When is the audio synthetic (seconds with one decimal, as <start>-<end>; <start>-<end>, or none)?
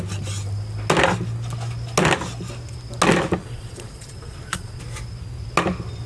3.4-4.8